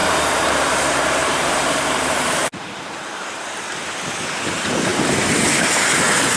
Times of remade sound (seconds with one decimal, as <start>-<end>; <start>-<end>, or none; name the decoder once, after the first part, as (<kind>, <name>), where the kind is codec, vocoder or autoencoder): 0.0-3.5 (vocoder, BigVGAN v2)